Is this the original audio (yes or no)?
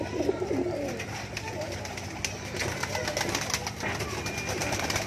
yes